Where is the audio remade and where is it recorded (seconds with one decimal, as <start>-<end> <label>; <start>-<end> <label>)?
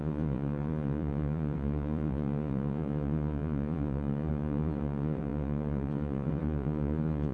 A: 0.0-7.3 remade